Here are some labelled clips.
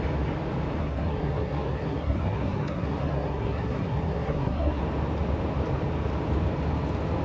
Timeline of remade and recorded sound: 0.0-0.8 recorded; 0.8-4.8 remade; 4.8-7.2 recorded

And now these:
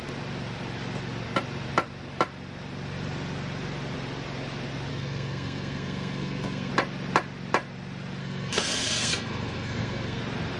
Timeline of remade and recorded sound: 0.0-4.9 recorded; 4.9-6.7 remade; 6.7-8.2 recorded; 8.2-10.2 remade; 10.2-10.6 recorded

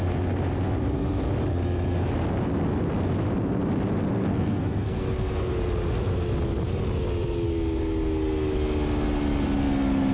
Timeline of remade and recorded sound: 0.0-4.2 recorded; 4.2-5.4 remade; 5.4-10.1 recorded

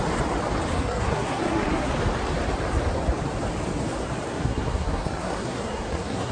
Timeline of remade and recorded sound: 0.0-0.7 recorded; 0.7-1.9 remade; 1.9-4.3 recorded; 4.3-6.3 remade

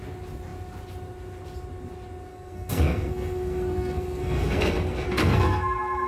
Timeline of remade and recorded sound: 0.0-2.3 recorded; 2.3-6.1 remade

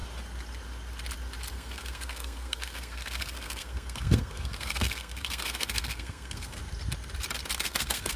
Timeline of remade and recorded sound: 0.0-1.5 recorded; 1.5-6.6 remade; 6.6-7.6 recorded; 7.6-8.2 remade

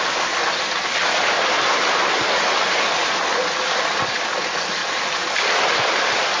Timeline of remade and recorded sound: 0.0-6.4 recorded